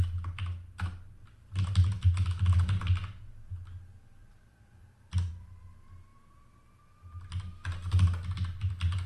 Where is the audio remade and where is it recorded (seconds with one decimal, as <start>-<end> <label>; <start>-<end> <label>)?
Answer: 0.0-4.2 recorded; 4.2-5.3 remade; 5.3-9.1 recorded

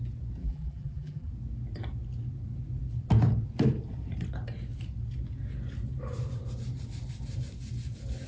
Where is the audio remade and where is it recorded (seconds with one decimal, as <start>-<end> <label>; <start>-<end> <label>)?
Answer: 0.0-0.4 recorded; 0.4-1.3 remade; 1.3-8.3 recorded

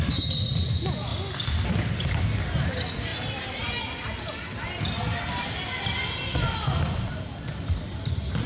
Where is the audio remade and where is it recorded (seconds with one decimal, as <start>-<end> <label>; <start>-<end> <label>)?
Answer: 0.0-8.5 recorded

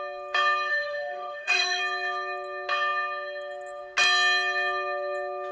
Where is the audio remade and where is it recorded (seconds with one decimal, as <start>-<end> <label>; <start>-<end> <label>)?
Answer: 0.0-0.7 recorded; 0.7-1.8 remade; 1.8-5.5 recorded

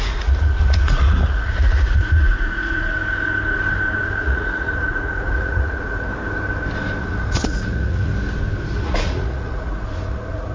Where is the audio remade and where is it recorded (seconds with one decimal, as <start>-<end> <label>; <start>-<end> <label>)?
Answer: 0.0-3.0 remade; 3.0-4.0 recorded; 4.0-6.1 remade; 6.1-7.0 recorded; 7.0-8.1 remade; 8.1-8.8 recorded; 8.8-10.5 remade